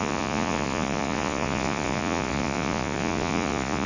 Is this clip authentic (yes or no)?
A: no